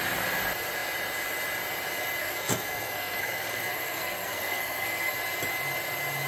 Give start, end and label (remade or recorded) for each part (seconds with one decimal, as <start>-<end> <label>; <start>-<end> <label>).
0.0-2.2 recorded; 2.2-5.1 remade; 5.1-6.3 recorded